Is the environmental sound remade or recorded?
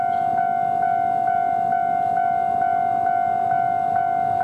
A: recorded